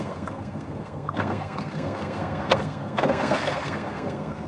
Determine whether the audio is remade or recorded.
remade